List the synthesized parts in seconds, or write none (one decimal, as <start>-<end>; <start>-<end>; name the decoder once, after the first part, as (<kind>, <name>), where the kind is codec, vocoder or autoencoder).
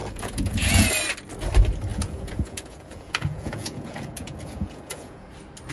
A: 0.0-0.9 (vocoder, Vocos); 1.9-5.3